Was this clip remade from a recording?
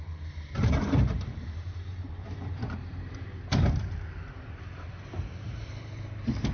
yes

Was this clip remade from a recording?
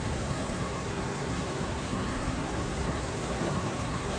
yes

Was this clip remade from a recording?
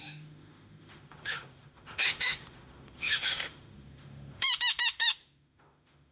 yes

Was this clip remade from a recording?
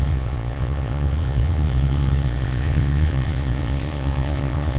yes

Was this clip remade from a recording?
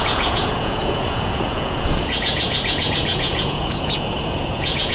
yes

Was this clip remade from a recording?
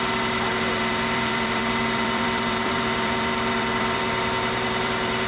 yes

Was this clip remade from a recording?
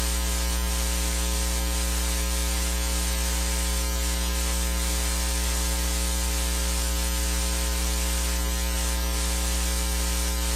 no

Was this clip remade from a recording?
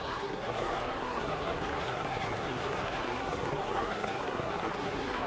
yes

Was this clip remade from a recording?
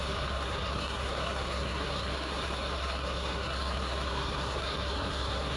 yes